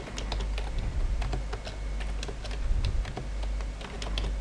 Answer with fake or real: real